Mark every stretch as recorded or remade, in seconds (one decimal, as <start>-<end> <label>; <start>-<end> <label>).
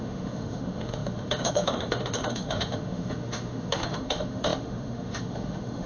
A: 0.0-5.9 remade